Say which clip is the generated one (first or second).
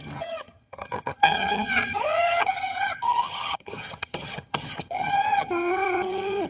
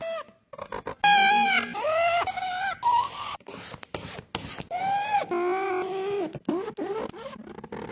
first